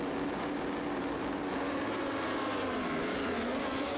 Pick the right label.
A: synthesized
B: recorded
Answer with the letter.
B